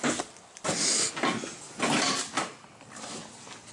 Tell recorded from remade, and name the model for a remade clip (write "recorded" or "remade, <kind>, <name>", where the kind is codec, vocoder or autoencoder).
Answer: recorded